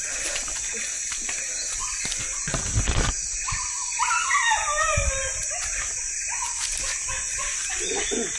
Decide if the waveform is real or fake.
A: real